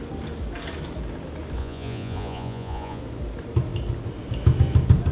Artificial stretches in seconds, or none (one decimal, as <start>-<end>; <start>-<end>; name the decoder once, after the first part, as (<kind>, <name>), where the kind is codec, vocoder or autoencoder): 1.6-3.0 (vocoder, Vocos)